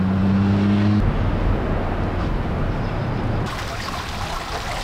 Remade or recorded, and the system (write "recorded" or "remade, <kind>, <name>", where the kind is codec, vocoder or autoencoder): recorded